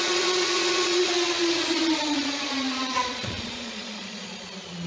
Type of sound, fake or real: fake